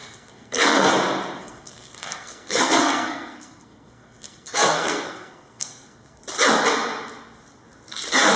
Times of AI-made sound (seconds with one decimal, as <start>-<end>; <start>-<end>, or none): 0.0-0.9; 1.4-6.2